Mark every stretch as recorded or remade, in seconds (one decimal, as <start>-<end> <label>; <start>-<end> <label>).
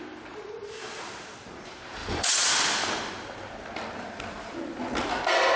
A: 0.0-2.0 recorded; 2.0-2.5 remade; 2.5-5.6 recorded